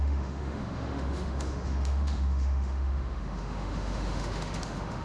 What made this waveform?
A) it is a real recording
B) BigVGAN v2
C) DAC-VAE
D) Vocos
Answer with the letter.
C